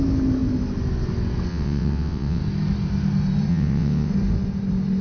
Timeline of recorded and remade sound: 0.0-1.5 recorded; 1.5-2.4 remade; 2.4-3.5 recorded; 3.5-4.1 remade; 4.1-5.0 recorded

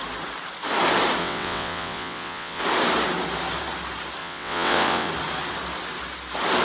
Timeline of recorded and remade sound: 0.0-1.2 recorded; 1.2-2.6 remade; 2.6-4.2 recorded; 4.2-5.1 remade; 5.1-6.6 recorded